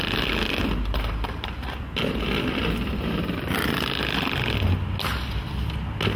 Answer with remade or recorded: recorded